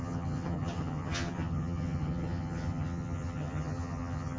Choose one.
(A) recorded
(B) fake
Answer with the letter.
B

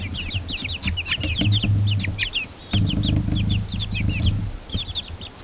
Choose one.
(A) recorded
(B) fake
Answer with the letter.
A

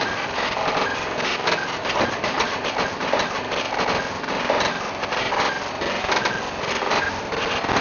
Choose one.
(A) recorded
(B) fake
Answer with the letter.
A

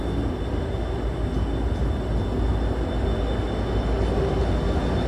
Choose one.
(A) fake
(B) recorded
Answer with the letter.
B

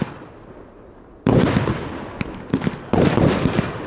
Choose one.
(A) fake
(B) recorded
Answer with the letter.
B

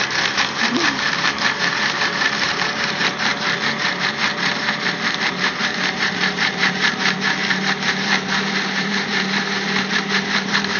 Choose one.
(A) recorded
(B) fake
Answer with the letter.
B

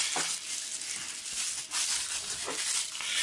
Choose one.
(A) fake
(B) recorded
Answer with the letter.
B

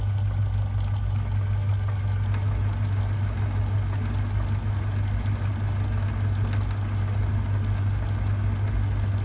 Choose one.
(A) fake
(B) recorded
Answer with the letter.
B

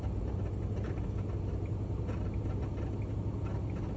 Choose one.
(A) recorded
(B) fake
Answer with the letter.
A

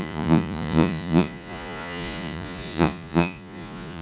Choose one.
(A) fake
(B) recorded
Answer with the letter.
A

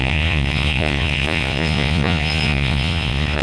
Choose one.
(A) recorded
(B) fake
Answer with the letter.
B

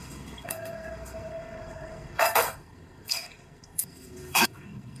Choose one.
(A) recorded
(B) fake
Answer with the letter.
B